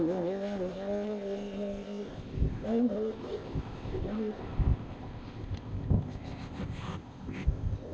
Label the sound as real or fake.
fake